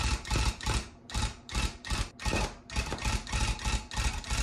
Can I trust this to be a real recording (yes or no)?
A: yes